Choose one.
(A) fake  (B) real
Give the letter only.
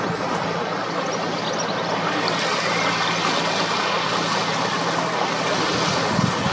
B